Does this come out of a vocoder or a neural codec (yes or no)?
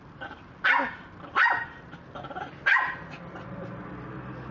no